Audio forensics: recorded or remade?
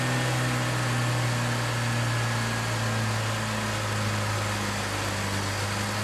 recorded